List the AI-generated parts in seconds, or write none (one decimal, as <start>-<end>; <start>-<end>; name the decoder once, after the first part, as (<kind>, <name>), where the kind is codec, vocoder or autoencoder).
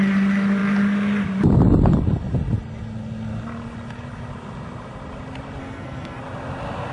5.6-6.2 (codec, SNAC)